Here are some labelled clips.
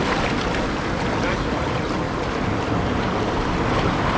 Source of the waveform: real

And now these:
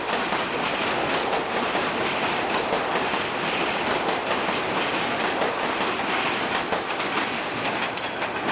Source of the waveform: real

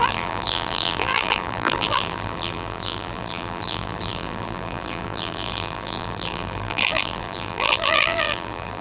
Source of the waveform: fake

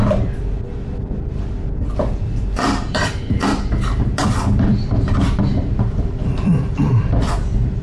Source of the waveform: fake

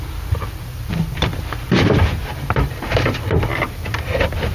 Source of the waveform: fake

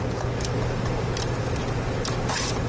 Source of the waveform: real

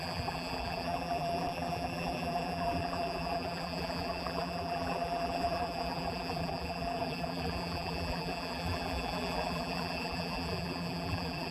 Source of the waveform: fake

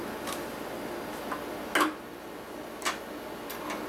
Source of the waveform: real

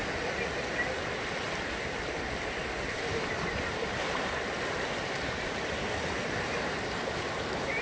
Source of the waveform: fake